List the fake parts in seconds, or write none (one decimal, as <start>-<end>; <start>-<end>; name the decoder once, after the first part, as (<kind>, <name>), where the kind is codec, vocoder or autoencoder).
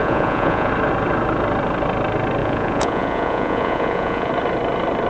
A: 0.0-0.7 (vocoder, Vocos); 2.4-4.3